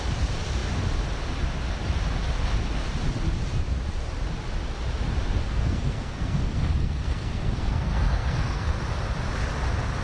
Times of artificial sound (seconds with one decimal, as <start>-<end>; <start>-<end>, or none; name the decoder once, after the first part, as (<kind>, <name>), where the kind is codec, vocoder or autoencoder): 5.4-8.8 (codec, SNAC)